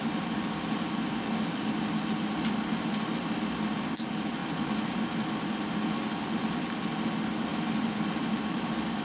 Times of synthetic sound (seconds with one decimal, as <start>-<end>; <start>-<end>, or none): none